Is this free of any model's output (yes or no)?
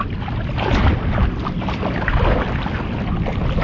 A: yes